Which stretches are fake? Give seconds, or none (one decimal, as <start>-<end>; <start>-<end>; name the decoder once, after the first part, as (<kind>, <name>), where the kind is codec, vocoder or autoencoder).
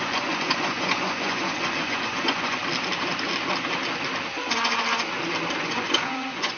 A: 0.0-2.6 (vocoder, Vocos); 5.6-6.6